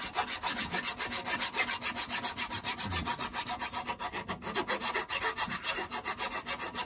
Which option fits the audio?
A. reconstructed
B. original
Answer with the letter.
B